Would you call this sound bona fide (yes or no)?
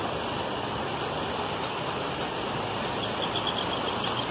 yes